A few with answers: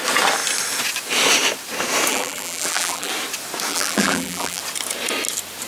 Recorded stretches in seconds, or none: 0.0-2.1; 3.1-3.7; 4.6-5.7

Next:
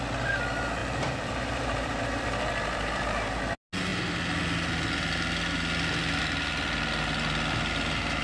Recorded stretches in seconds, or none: 0.0-0.8; 3.4-8.2